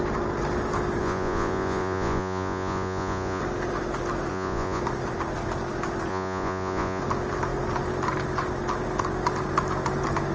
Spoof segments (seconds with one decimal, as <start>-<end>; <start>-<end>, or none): 1.0-3.4; 4.3-4.8; 6.1-7.0